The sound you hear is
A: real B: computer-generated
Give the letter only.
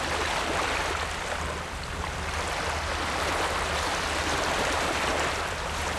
A